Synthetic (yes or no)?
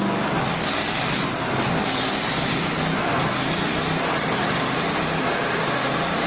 no